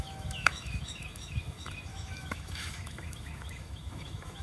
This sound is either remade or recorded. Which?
remade